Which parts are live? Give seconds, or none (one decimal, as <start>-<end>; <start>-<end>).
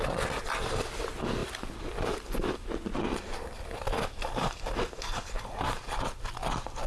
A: 0.0-6.9